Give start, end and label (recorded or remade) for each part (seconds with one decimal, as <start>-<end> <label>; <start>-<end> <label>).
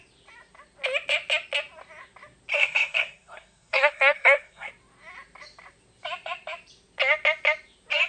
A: 0.0-2.5 recorded; 2.5-4.7 remade; 4.7-8.1 recorded